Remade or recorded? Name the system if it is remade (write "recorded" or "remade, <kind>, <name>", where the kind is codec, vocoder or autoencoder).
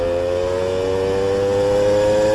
recorded